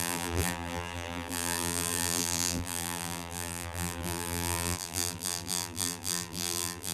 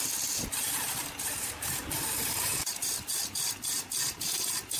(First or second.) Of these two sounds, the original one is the second